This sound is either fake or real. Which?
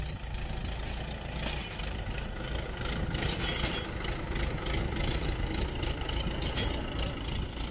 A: real